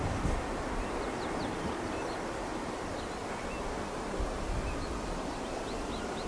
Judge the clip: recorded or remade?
recorded